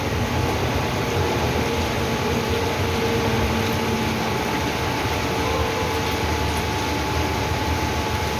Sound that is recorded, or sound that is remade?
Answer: recorded